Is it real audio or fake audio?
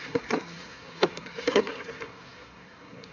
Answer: fake